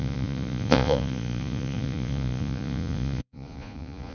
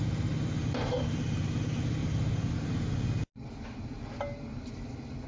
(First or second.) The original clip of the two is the second